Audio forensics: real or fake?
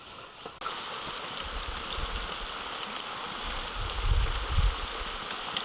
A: real